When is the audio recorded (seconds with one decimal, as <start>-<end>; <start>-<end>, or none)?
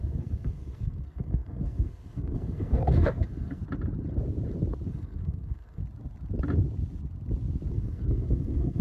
3.6-4.9; 5.8-7.7